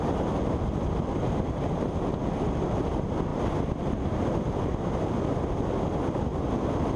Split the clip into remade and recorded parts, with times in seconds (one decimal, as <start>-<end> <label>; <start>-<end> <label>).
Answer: 0.0-7.0 recorded

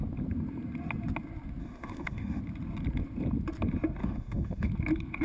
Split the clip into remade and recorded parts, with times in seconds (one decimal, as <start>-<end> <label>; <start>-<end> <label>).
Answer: 0.0-1.6 recorded; 1.6-2.4 remade; 2.4-4.0 recorded; 4.0-4.7 remade; 4.7-5.2 recorded

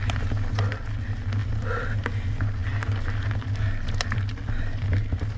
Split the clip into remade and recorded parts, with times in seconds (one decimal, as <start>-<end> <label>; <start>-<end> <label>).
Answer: 0.0-5.4 recorded

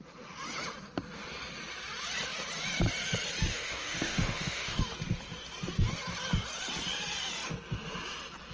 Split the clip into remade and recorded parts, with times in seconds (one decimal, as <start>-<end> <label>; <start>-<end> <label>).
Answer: 0.0-3.5 recorded; 3.5-4.8 remade; 4.8-8.5 recorded

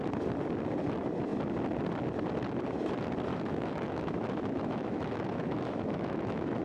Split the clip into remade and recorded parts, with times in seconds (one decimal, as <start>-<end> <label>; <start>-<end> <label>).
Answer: 0.0-3.3 recorded; 3.3-6.6 remade

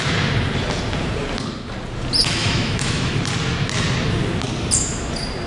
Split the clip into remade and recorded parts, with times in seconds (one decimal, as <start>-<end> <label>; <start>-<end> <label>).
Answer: 0.0-2.4 recorded; 2.4-3.2 remade; 3.2-5.5 recorded

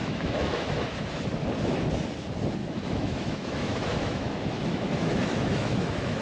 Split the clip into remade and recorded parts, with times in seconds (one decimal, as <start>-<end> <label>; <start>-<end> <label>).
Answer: 0.0-1.2 remade; 1.2-2.6 recorded; 2.6-6.2 remade